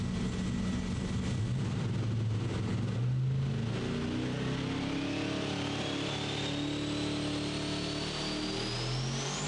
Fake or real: real